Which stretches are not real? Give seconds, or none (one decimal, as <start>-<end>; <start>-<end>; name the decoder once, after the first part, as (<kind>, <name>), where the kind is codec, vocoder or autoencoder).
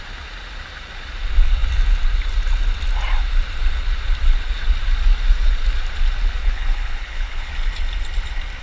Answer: 6.4-7.5 (codec, HILCodec)